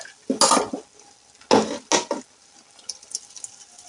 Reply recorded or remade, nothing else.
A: recorded